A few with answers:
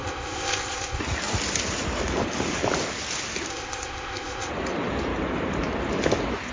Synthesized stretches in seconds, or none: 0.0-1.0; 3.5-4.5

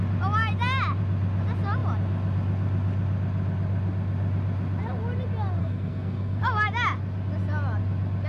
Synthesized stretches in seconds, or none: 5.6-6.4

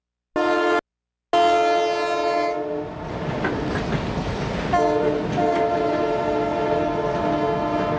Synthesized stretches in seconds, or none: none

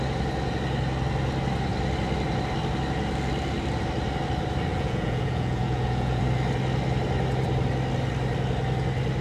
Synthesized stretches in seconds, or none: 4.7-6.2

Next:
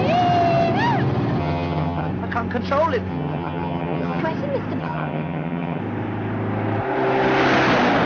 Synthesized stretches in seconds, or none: 1.4-2.1; 3.1-4.2; 4.8-5.8

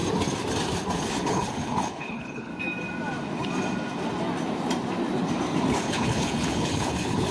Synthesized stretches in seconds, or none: 1.0-2.5; 5.8-7.3